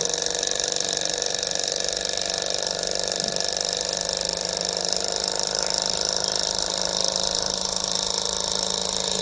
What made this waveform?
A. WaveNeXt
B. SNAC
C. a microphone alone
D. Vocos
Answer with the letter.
C